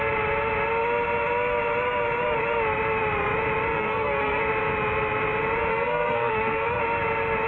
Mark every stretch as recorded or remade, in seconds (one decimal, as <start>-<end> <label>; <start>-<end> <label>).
0.0-3.7 recorded; 3.7-4.4 remade; 4.4-5.7 recorded; 5.7-6.8 remade; 6.8-7.5 recorded